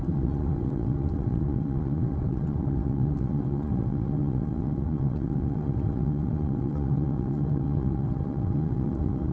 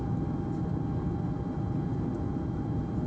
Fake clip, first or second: first